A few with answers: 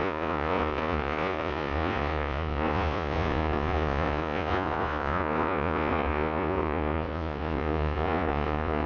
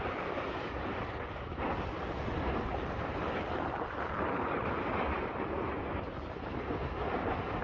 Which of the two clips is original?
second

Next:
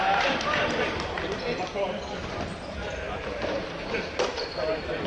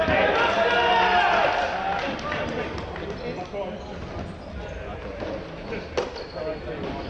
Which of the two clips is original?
second